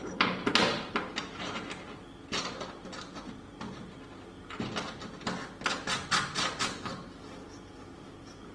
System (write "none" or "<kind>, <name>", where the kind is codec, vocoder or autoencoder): none